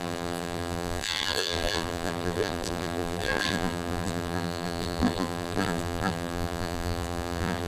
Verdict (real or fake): fake